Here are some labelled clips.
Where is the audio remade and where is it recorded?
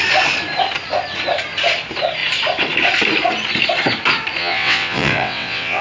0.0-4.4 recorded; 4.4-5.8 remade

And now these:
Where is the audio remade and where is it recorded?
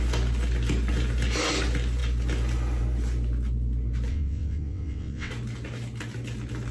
0.0-4.1 recorded; 4.1-5.3 remade; 5.3-6.7 recorded